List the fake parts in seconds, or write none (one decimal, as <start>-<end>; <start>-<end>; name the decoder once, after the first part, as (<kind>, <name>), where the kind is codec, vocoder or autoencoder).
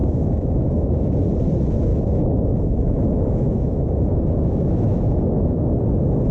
0.0-1.0 (autoencoder, DAC-VAE); 1.9-5.7